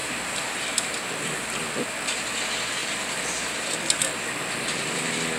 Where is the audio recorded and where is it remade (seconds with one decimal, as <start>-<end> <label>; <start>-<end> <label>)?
0.0-1.1 remade; 1.1-5.4 recorded

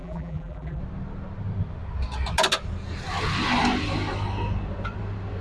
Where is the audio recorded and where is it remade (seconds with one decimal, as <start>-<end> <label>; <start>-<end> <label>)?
0.0-0.8 remade; 0.8-5.4 recorded